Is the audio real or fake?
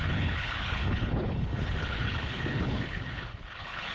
fake